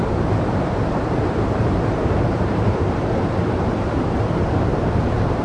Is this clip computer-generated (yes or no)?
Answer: yes